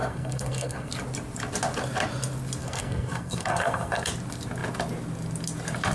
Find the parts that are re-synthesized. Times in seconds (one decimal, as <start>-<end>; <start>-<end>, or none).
0.0-0.9; 2.6-4.1

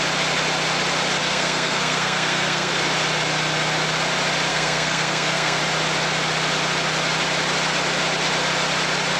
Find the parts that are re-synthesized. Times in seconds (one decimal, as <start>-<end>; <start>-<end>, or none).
1.2-2.7; 4.5-5.6